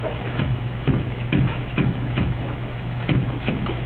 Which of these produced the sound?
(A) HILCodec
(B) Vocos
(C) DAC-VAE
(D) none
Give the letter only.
C